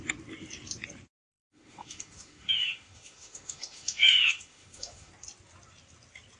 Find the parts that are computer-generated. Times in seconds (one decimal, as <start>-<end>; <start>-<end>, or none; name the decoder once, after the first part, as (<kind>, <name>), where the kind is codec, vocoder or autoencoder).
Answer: 1.3-5.1 (autoencoder, DAC-VAE)